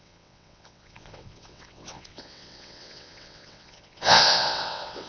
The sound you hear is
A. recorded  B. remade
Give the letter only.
B